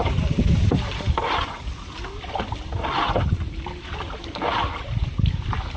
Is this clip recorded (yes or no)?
yes